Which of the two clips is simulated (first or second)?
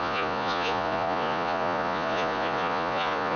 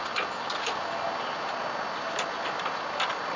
first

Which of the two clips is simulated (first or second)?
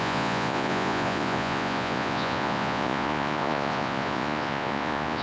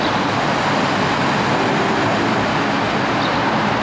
first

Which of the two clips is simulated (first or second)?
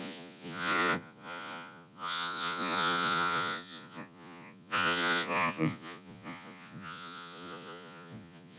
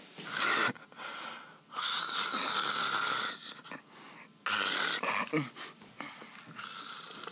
first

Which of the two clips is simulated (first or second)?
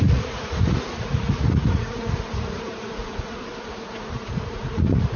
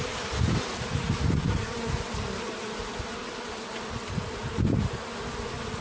first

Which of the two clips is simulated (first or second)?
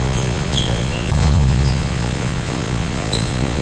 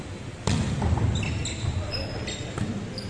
first